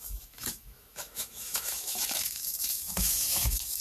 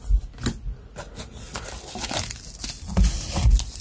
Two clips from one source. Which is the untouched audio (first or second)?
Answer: second